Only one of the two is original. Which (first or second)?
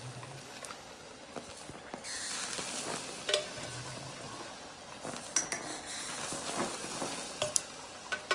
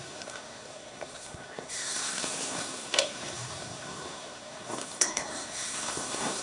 first